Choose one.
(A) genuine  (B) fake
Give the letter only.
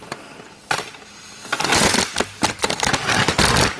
A